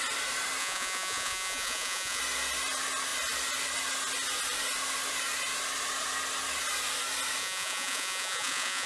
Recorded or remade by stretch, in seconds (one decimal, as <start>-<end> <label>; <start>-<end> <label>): 0.0-0.6 recorded; 0.6-2.2 remade; 2.2-7.4 recorded; 7.4-8.9 remade